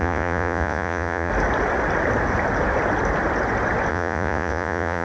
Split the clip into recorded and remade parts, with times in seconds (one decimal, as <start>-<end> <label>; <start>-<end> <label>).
0.0-1.3 remade; 1.3-3.9 recorded; 3.9-5.0 remade